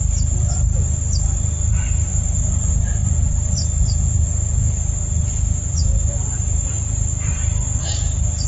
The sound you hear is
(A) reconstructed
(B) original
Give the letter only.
B